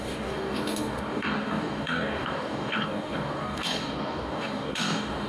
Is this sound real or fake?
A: fake